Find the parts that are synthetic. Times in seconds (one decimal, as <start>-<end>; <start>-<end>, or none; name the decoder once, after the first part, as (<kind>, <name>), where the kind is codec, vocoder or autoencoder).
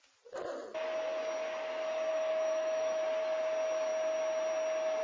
2.1-3.0 (autoencoder, DAC-VAE)